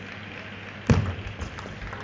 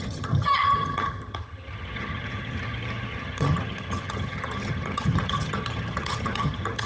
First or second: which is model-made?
second